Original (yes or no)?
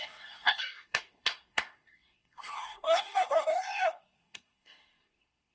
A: no